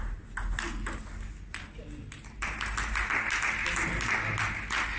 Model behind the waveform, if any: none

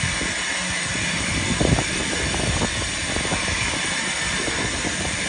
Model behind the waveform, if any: none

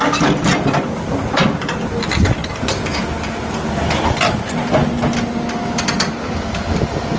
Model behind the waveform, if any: none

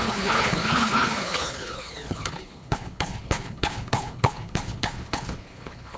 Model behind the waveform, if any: codec, HILCodec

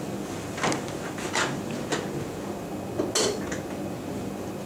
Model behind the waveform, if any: none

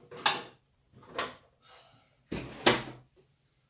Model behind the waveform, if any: none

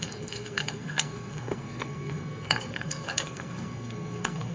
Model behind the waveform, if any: codec, SNAC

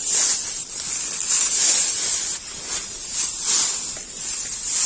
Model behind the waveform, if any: none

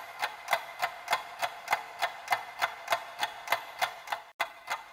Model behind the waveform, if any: none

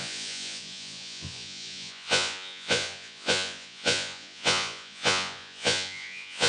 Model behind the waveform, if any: vocoder, Vocos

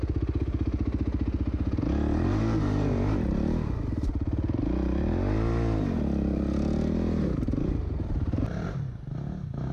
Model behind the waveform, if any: none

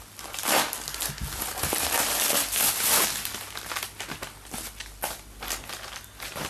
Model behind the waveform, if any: none